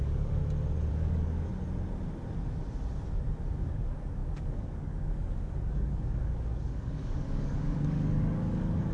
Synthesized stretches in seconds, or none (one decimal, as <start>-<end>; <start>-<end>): 0.0-0.4; 0.9-1.5; 3.6-8.9